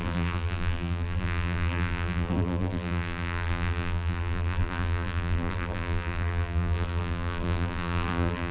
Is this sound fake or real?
fake